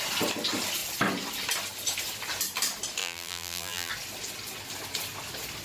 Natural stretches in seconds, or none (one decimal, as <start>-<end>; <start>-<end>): 0.0-3.0; 3.9-5.6